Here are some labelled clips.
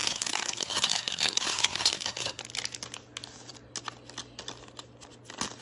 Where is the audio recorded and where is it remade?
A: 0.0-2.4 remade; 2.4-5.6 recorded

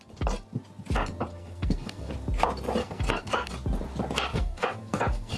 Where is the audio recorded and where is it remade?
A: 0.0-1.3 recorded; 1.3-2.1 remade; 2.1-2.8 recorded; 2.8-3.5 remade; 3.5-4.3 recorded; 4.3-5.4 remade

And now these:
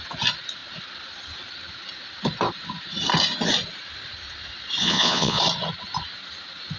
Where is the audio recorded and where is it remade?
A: 0.0-4.8 recorded; 4.8-5.4 remade; 5.4-6.8 recorded

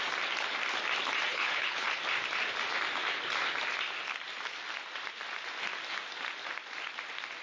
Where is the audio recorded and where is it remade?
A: 0.0-1.3 recorded; 1.3-2.0 remade; 2.0-7.4 recorded

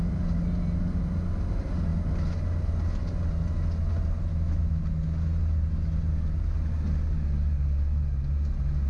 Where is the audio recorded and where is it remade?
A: 0.0-4.3 recorded; 4.3-4.8 remade; 4.8-8.9 recorded

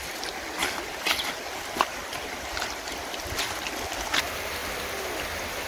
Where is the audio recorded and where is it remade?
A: 0.0-0.6 recorded; 0.6-4.0 remade; 4.0-4.6 recorded; 4.6-5.7 remade